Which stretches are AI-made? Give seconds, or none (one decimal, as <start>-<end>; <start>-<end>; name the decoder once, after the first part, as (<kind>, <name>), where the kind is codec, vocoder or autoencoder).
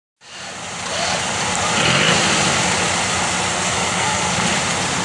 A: 3.5-4.3 (codec, SNAC)